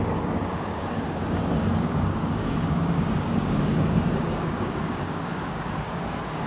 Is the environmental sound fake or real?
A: fake